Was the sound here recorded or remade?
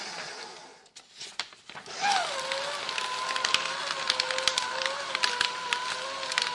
recorded